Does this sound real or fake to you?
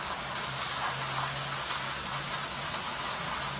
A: real